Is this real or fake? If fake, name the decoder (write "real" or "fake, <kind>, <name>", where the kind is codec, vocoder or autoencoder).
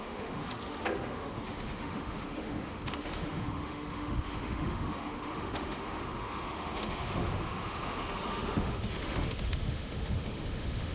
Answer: fake, autoencoder, DAC-VAE